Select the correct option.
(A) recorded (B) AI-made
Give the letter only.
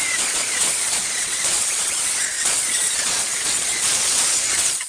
B